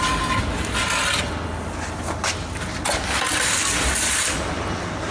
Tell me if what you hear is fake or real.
real